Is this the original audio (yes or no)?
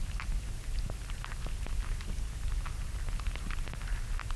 yes